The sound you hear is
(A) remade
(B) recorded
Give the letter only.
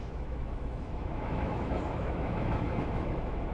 A